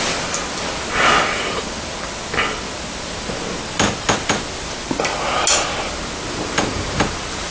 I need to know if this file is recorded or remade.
recorded